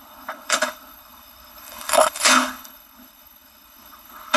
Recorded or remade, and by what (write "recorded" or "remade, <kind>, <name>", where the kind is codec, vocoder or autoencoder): remade, codec, HILCodec